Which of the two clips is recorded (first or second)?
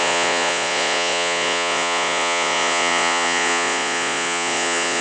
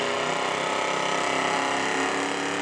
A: second